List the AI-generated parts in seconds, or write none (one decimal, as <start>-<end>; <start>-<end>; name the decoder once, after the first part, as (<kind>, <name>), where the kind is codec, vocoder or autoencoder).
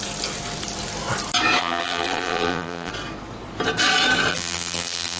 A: 1.6-2.9 (vocoder, BigVGAN v2); 4.3-5.2